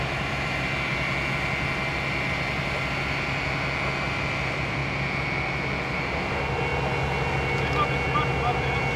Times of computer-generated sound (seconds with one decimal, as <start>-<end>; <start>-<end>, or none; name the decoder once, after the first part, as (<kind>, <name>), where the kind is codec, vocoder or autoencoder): none